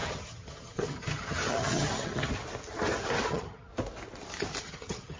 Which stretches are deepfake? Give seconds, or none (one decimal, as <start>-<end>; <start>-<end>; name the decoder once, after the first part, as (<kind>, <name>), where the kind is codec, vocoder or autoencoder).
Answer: 0.0-2.3 (vocoder, HiFi-GAN); 3.3-3.7; 4.6-5.2